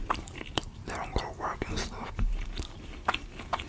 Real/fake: fake